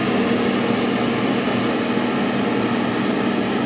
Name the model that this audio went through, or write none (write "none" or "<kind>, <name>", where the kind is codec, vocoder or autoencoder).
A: none